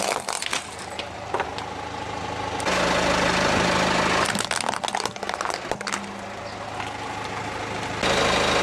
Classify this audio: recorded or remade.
recorded